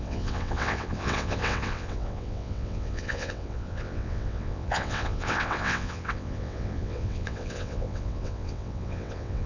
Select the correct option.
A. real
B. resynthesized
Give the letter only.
B